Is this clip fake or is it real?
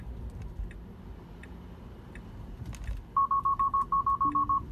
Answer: real